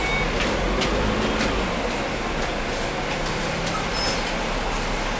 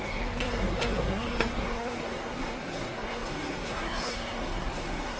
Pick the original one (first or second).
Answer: first